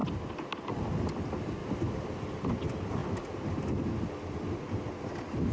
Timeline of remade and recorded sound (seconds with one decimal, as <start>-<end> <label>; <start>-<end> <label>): 0.0-1.6 recorded; 1.6-2.5 remade; 2.5-5.5 recorded